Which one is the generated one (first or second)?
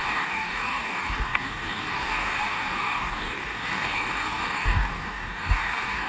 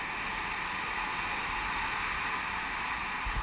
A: first